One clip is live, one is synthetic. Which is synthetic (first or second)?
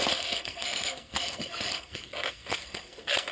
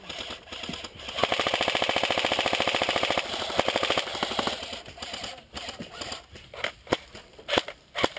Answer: first